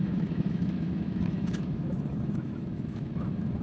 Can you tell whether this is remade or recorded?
remade